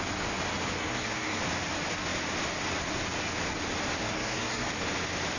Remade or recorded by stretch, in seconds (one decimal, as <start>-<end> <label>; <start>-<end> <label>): 0.0-0.8 recorded; 0.8-1.4 remade; 1.4-4.0 recorded; 4.0-4.7 remade; 4.7-5.4 recorded